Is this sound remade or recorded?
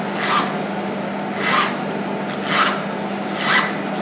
recorded